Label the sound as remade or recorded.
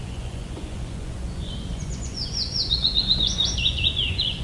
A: remade